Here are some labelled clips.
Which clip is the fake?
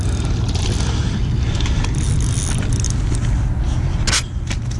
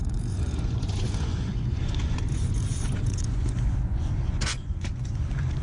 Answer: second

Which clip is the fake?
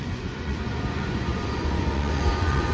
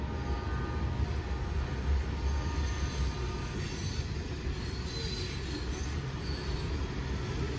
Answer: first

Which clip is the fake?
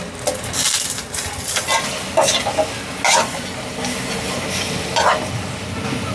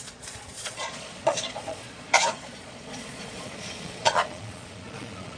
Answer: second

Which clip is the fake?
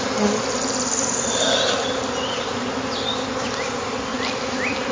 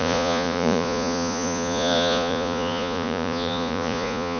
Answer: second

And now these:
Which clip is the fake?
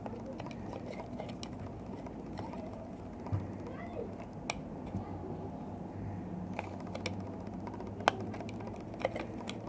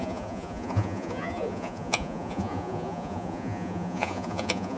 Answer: second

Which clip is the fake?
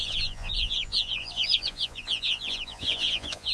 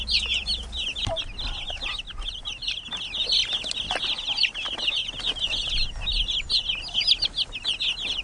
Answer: first